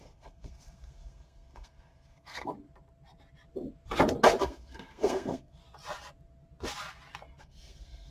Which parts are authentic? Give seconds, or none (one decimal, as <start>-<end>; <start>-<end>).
2.5-4.4; 5.6-7.4